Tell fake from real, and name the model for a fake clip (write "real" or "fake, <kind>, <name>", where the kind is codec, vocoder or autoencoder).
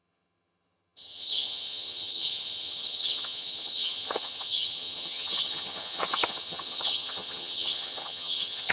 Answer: fake, vocoder, HiFi-GAN